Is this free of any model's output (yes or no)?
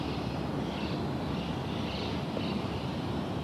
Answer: yes